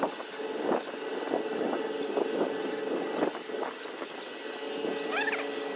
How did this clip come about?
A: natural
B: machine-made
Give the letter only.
A